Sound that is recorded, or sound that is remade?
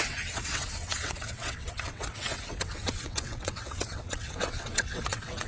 remade